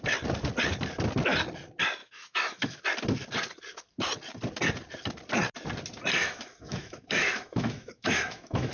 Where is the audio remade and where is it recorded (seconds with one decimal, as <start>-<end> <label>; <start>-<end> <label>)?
0.0-2.0 recorded; 2.0-2.8 remade; 2.8-6.2 recorded; 6.2-8.7 remade